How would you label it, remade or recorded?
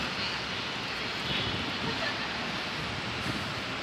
recorded